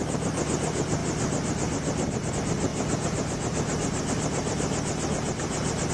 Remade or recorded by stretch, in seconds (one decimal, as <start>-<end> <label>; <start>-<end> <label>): 0.0-5.9 recorded